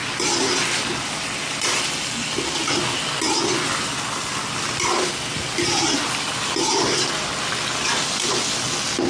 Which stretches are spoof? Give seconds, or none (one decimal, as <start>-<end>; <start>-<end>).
none